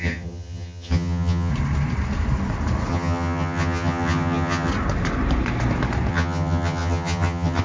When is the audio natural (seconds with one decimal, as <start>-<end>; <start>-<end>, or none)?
1.5-2.9; 4.7-6.1